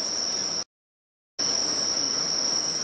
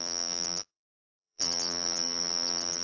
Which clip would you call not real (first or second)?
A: second